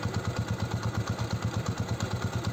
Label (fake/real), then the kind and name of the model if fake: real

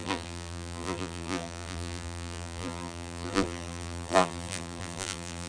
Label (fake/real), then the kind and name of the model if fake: fake, vocoder, BigVGAN v2